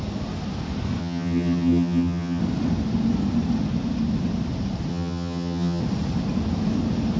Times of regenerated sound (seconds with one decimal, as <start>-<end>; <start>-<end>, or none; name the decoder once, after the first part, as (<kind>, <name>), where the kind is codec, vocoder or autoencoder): 1.0-2.4 (vocoder, HiFi-GAN); 4.9-5.8